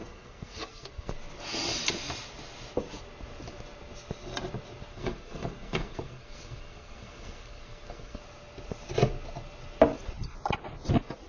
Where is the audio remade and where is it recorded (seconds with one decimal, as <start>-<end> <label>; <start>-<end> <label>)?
0.0-1.1 remade; 1.1-4.9 recorded; 4.9-8.2 remade; 8.2-11.3 recorded

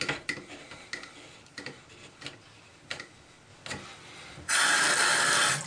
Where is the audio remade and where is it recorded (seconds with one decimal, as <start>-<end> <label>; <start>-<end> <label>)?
0.0-5.7 recorded

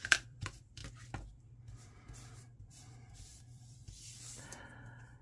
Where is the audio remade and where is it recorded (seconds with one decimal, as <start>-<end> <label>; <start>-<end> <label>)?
0.0-0.8 remade; 0.8-2.6 recorded; 2.6-5.2 remade

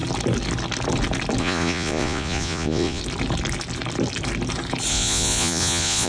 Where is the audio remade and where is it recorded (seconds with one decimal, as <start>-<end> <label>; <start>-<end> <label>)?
0.0-1.4 recorded; 1.4-3.0 remade; 3.0-4.9 recorded; 4.9-6.1 remade

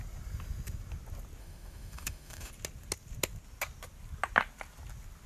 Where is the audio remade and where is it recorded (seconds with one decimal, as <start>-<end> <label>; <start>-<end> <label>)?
0.0-1.4 recorded; 1.4-2.5 remade; 2.5-5.3 recorded

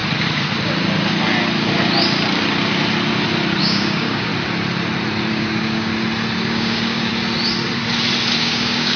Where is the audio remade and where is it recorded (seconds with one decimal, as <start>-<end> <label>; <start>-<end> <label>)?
0.0-3.6 recorded; 3.6-4.3 remade; 4.3-5.3 recorded; 5.3-5.9 remade; 5.9-6.4 recorded; 6.4-7.1 remade; 7.1-8.4 recorded; 8.4-9.0 remade